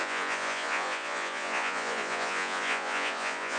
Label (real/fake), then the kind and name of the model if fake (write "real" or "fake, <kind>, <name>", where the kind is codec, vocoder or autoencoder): fake, vocoder, Vocos